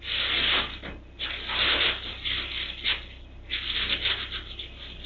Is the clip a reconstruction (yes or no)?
no